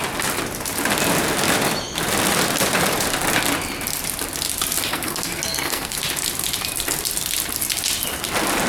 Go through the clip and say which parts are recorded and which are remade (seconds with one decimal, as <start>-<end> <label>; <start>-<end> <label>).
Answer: 0.0-4.9 recorded; 4.9-6.0 remade; 6.0-8.7 recorded